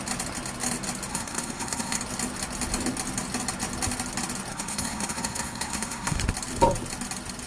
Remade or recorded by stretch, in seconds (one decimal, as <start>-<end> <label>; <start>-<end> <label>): 0.0-1.1 recorded; 1.1-2.0 remade; 2.0-4.5 recorded; 4.5-6.2 remade; 6.2-7.5 recorded